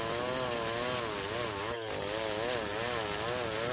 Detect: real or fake real